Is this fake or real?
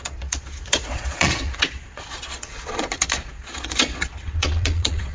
fake